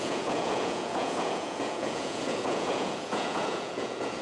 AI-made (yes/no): yes